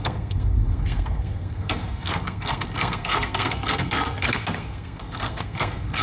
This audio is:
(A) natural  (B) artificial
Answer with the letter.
B